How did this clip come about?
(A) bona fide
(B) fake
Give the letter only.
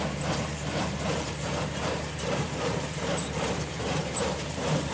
B